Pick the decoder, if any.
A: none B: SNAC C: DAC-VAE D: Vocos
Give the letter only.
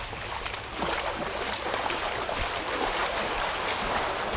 A